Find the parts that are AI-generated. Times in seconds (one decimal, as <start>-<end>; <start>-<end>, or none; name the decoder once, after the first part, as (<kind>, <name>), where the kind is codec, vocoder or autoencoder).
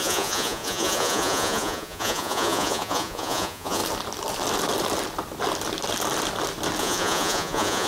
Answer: 0.0-3.8 (vocoder, Vocos); 6.8-7.9